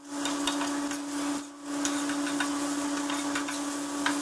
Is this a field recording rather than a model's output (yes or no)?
yes